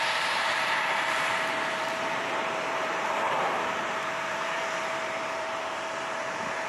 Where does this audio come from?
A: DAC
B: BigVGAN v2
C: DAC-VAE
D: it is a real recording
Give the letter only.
B